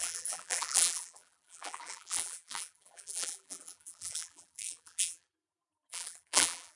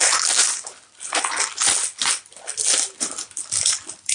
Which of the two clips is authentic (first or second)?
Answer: second